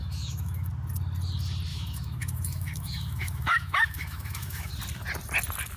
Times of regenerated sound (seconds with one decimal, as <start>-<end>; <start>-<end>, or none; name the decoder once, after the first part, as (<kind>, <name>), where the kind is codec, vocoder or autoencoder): 0.0-0.7 (autoencoder, DAC-VAE); 1.7-4.7